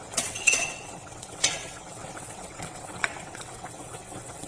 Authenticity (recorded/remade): remade